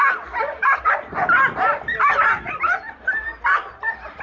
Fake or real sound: fake